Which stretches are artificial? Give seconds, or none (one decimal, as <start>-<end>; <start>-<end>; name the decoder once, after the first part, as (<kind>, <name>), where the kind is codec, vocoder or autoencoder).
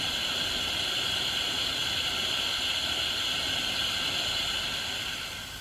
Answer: none